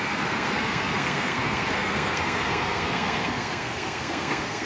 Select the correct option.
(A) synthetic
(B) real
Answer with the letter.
A